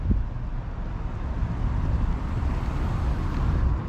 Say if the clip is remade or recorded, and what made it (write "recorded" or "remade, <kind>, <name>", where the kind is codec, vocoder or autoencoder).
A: recorded